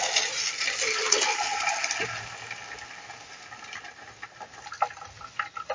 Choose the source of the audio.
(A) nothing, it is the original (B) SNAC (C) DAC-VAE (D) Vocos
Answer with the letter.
A